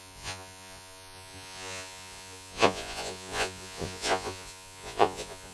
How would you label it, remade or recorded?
remade